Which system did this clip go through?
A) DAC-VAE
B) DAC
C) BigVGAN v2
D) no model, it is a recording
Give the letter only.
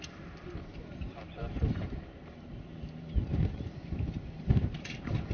C